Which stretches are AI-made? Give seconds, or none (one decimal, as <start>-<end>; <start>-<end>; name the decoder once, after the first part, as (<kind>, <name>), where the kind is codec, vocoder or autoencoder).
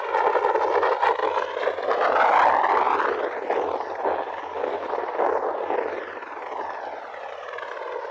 none